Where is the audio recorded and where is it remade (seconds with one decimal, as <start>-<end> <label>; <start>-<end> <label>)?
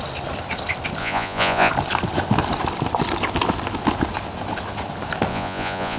0.0-1.0 recorded; 1.0-1.7 remade; 1.7-5.3 recorded; 5.3-6.0 remade